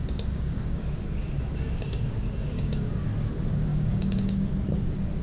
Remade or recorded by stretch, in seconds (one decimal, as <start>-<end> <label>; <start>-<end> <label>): 0.0-3.1 remade; 3.1-3.7 recorded; 3.7-4.5 remade; 4.5-5.2 recorded